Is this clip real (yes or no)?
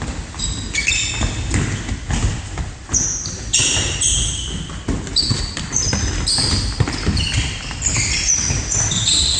yes